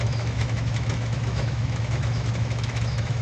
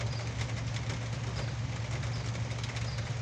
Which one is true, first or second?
second